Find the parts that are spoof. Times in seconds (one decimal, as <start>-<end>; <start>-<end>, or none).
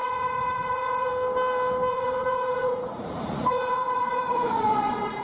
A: 0.0-1.1; 1.9-5.2